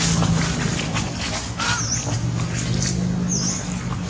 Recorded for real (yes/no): yes